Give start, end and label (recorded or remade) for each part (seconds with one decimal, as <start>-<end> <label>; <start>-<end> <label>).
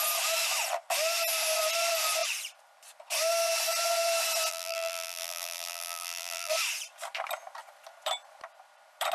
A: 0.0-4.5 recorded; 4.5-6.5 remade; 6.5-9.1 recorded